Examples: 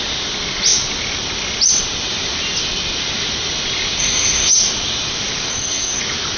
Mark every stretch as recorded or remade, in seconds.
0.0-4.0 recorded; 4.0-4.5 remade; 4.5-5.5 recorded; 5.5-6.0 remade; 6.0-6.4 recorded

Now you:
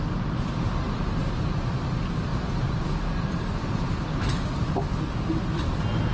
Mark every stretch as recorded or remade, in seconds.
0.0-6.1 recorded

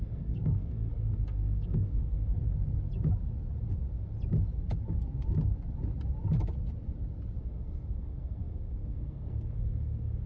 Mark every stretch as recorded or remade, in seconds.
0.0-2.4 remade; 2.4-7.4 recorded; 7.4-10.3 remade